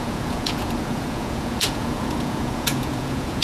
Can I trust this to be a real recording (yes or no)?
no